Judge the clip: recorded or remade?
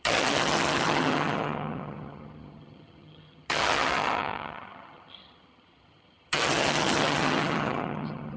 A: remade